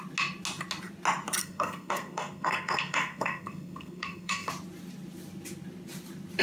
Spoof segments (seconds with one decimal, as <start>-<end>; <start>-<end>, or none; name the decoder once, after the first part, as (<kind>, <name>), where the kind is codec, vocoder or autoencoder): 1.4-4.5 (codec, SNAC)